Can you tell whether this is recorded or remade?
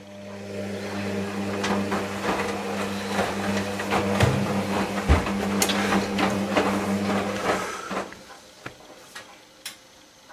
recorded